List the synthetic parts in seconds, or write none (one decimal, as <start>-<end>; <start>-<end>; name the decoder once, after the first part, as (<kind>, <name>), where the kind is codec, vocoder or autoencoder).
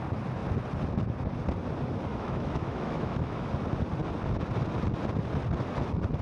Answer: 2.1-3.5 (autoencoder, DAC-VAE)